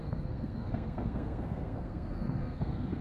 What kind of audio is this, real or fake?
fake